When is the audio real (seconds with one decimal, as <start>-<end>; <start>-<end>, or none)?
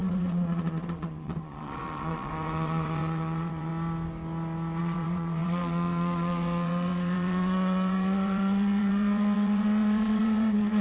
3.7-4.8